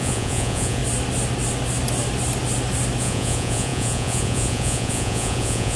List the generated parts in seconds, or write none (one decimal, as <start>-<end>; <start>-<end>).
0.0-0.8; 3.0-5.8